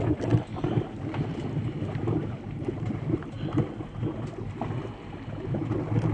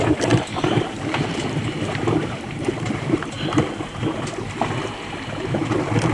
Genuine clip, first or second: first